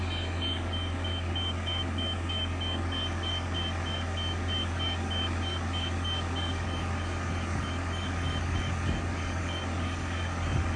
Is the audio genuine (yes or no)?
no